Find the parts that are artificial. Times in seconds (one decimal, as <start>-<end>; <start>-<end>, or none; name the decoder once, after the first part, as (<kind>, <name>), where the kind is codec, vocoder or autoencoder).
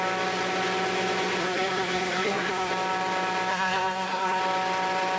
1.4-2.7 (codec, SNAC); 3.5-4.4